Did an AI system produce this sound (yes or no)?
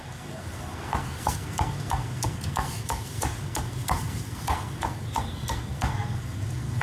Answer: yes